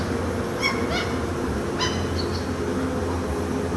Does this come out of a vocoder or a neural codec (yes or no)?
no